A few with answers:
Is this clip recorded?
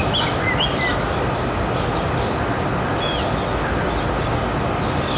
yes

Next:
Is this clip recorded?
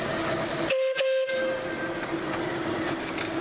yes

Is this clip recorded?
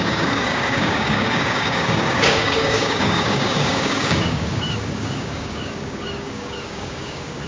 no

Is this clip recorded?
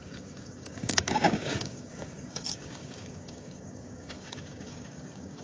no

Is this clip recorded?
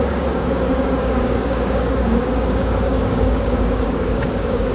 no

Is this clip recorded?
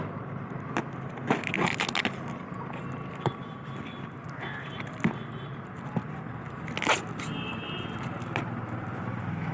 yes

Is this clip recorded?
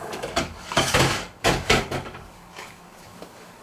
no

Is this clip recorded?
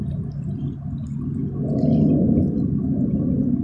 yes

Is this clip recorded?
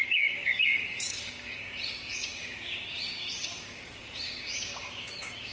no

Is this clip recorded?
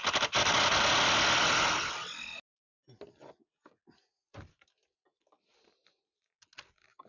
yes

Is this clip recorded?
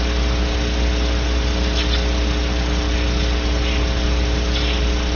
yes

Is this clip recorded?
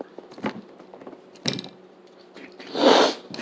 yes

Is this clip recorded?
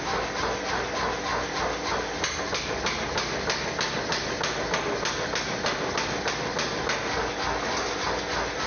yes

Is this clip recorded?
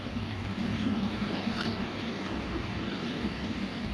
no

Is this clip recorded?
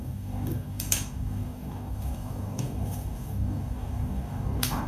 no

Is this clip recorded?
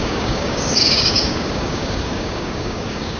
no